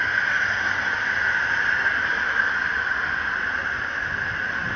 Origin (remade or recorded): recorded